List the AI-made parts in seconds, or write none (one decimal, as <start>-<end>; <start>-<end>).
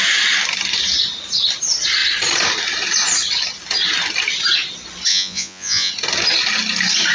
5.1-5.9